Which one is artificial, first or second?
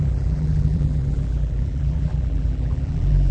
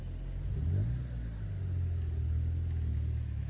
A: first